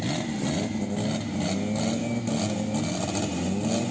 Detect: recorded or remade recorded